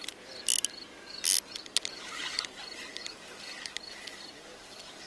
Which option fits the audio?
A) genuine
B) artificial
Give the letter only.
A